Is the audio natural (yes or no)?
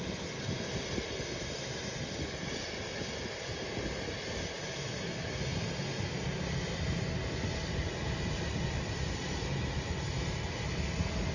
yes